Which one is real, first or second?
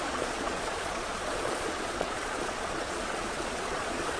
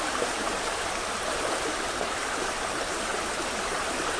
second